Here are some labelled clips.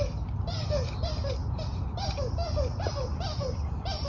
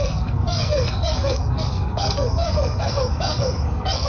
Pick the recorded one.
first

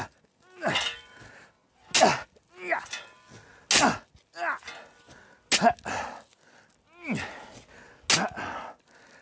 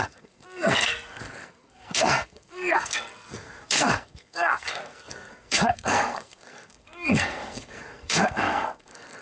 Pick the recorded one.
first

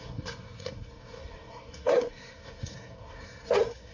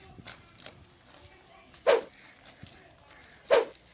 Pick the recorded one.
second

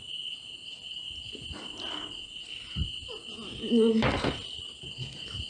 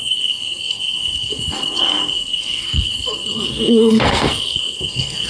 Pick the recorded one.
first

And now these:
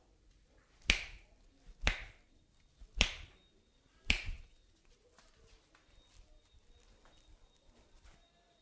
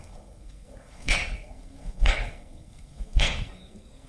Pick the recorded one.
first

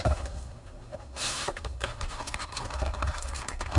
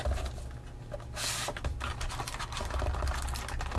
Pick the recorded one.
second